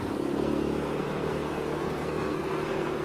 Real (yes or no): no